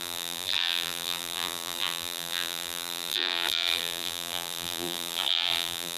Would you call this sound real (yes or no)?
no